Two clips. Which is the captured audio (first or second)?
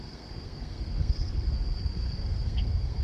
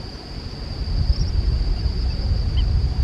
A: second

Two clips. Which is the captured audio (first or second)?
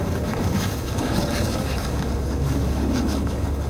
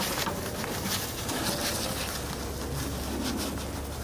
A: second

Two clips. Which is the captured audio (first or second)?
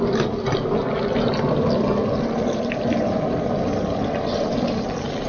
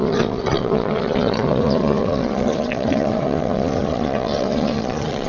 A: first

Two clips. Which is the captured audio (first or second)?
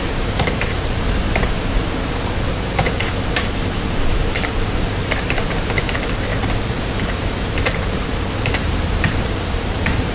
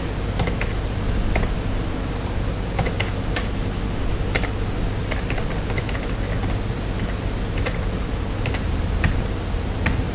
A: second